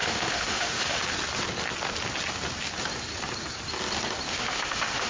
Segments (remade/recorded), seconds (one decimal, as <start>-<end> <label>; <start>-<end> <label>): 0.0-1.0 remade; 1.0-4.3 recorded; 4.3-5.1 remade